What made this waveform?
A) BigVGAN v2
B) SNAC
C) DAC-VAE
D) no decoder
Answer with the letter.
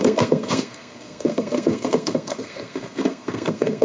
B